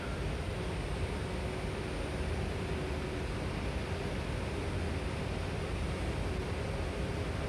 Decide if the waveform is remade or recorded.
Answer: recorded